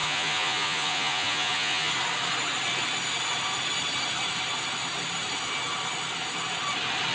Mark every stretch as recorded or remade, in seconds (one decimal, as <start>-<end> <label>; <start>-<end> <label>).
0.0-1.9 remade; 1.9-7.1 recorded